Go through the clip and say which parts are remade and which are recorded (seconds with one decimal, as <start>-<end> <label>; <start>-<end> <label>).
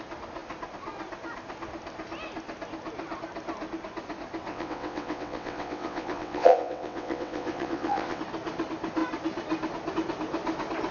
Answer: 0.0-4.5 recorded; 4.5-8.2 remade; 8.2-10.9 recorded